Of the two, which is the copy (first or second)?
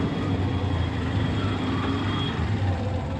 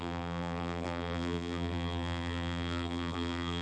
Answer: second